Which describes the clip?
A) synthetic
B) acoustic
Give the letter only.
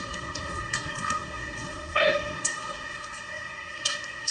A